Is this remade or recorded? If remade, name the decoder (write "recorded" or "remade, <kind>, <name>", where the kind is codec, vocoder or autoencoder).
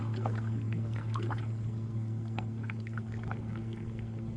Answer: remade, codec, SNAC